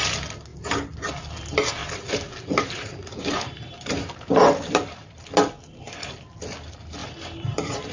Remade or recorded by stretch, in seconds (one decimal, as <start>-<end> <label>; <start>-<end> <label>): 0.0-1.8 recorded; 1.8-5.2 remade; 5.2-7.0 recorded; 7.0-7.9 remade